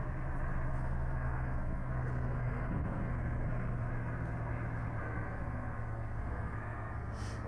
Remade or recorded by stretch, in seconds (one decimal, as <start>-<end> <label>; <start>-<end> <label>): 0.0-0.7 recorded; 0.7-3.9 remade; 3.9-5.0 recorded; 5.0-7.1 remade; 7.1-7.5 recorded